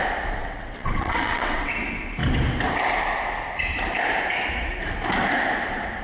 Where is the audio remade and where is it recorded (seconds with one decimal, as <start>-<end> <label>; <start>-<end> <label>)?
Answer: 0.0-0.4 recorded; 0.4-1.7 remade; 1.7-6.0 recorded